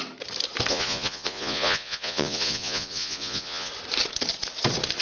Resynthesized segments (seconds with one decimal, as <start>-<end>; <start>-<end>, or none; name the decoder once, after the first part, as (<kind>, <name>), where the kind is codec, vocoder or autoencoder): 0.7-3.7 (vocoder, Vocos)